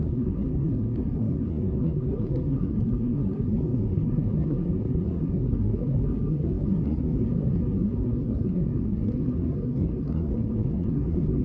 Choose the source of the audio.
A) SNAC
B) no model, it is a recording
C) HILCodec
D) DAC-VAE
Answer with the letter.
A